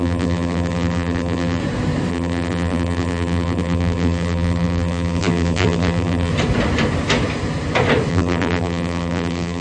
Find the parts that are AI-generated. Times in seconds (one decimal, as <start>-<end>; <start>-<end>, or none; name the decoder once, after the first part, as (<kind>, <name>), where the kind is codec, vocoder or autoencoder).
0.0-1.6 (vocoder, BigVGAN v2); 2.1-6.3; 8.1-9.6